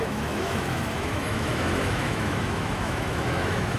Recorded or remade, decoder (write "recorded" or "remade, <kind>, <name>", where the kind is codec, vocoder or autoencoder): remade, autoencoder, DAC-VAE